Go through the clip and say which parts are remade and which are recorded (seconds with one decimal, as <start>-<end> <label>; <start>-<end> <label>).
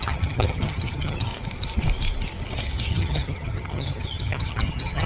0.0-1.3 remade; 1.3-2.9 recorded; 2.9-5.1 remade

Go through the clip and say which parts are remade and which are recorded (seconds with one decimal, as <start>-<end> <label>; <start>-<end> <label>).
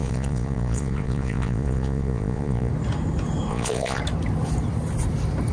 0.0-2.7 remade; 2.7-3.5 recorded; 3.5-4.0 remade; 4.0-5.5 recorded